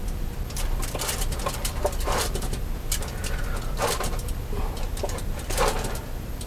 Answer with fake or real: fake